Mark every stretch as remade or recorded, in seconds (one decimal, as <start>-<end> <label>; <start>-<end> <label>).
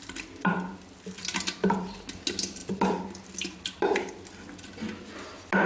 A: 0.0-5.7 recorded